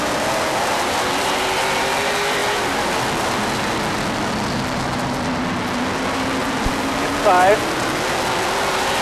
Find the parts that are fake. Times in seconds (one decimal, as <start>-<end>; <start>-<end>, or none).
none